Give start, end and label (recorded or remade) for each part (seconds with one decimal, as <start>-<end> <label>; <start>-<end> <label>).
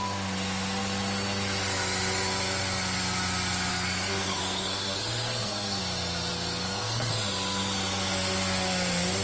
0.0-3.7 recorded; 3.7-5.8 remade; 5.8-6.3 recorded; 6.3-7.1 remade; 7.1-9.2 recorded